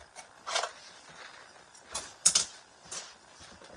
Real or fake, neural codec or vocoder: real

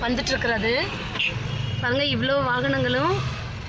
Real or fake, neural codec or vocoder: real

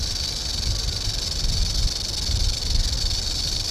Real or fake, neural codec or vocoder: real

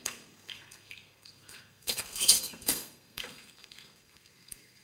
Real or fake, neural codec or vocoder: fake, codec, SNAC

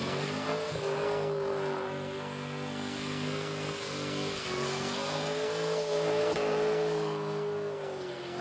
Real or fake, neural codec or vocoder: fake, codec, SNAC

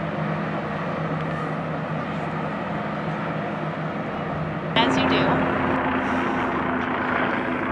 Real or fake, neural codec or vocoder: real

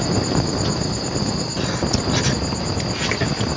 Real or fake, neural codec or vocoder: real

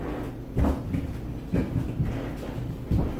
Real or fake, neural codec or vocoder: real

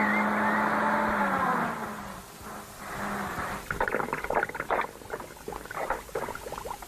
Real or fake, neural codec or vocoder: real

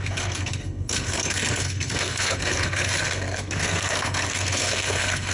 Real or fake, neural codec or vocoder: fake, codec, SNAC